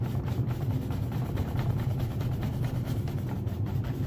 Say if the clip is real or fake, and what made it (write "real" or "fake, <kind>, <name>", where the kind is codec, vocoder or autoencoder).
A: fake, vocoder, BigVGAN v2